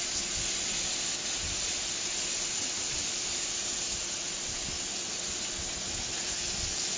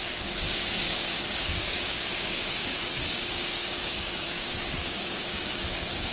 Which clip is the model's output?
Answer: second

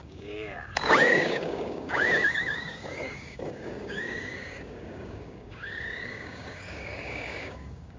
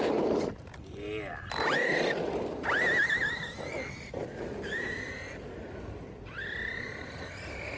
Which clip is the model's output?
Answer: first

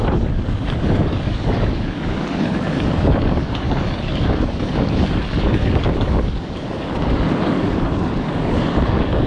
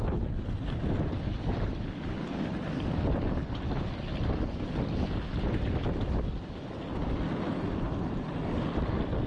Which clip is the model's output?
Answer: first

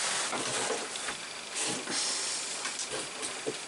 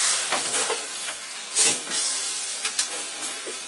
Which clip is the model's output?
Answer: second